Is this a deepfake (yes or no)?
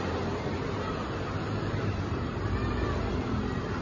yes